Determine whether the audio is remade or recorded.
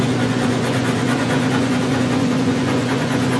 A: remade